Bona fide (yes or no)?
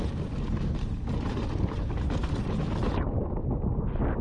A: yes